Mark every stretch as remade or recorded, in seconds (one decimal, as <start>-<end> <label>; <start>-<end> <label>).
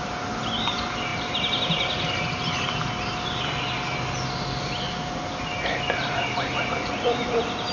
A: 0.0-7.7 recorded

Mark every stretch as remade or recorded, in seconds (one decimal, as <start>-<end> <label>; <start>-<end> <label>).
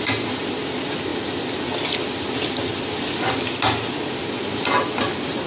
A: 0.0-5.5 recorded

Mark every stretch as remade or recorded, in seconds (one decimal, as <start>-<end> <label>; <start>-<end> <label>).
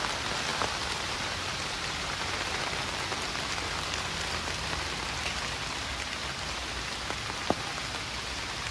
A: 0.0-0.5 recorded; 0.5-2.6 remade; 2.6-8.7 recorded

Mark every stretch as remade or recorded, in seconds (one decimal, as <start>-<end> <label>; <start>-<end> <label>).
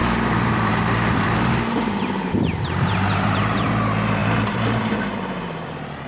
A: 0.0-3.7 remade; 3.7-4.2 recorded; 4.2-5.6 remade; 5.6-6.1 recorded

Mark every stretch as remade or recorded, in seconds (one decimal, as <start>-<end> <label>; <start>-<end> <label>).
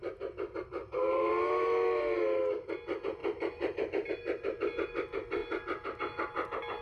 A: 0.0-0.8 recorded; 0.8-1.3 remade; 1.3-3.2 recorded; 3.2-4.1 remade; 4.1-6.8 recorded